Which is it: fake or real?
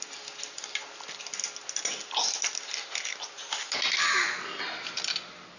real